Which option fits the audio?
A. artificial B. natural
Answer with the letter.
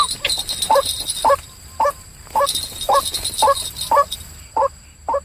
B